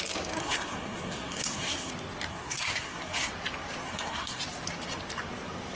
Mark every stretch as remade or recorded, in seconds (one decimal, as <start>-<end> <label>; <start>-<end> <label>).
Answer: 0.0-0.4 recorded; 0.4-1.9 remade; 1.9-2.3 recorded; 2.3-3.3 remade; 3.3-3.8 recorded; 3.8-4.4 remade; 4.4-5.8 recorded